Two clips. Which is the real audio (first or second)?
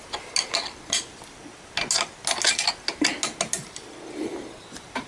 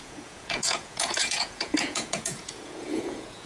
first